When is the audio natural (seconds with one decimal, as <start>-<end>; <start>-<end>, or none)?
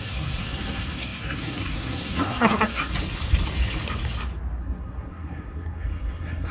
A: 2.9-4.6